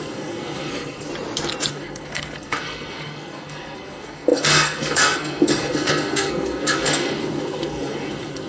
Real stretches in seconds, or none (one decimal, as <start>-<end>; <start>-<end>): 1.1-1.7